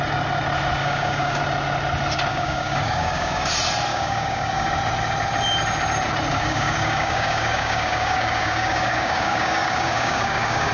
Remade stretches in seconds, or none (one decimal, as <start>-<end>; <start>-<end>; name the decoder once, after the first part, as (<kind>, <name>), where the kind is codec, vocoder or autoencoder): 0.8-1.4 (codec, DAC); 2.3-3.5; 3.9-4.7; 6.3-10.7